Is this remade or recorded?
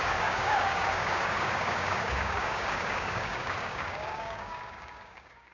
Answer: remade